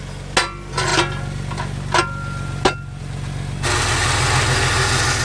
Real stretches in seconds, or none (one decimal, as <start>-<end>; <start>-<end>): 0.0-5.2